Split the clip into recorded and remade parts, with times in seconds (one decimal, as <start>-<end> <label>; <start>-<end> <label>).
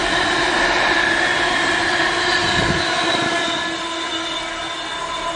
0.0-5.4 recorded